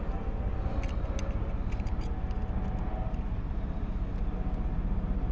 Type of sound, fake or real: real